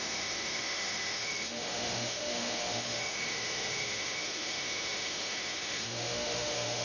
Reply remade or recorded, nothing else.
remade